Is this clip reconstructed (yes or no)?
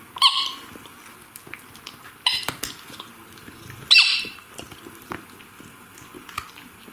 no